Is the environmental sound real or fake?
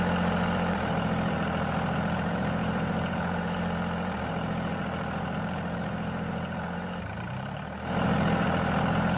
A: fake